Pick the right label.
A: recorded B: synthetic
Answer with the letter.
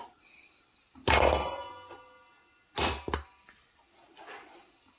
A